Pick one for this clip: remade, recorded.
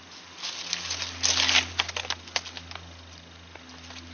recorded